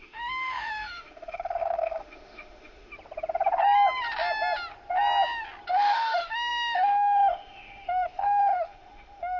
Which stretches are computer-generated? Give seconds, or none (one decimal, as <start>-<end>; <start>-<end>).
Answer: 0.0-2.9; 5.7-9.4